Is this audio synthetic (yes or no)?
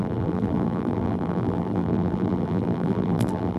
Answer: yes